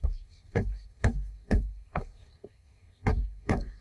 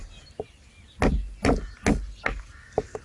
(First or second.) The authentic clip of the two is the second